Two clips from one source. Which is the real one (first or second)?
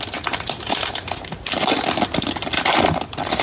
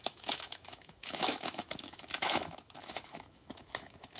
first